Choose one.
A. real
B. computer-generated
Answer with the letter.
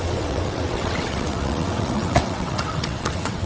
B